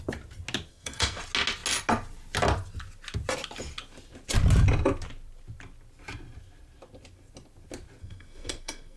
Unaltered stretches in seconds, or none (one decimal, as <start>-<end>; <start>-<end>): 0.0-0.7; 1.2-8.0